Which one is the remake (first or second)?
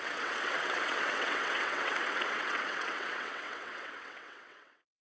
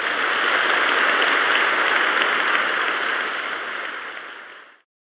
first